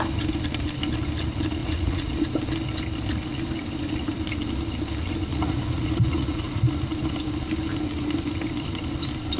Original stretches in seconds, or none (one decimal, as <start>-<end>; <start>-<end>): 0.0-1.6; 2.1-5.3; 6.6-9.4